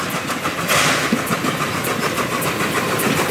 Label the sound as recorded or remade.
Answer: recorded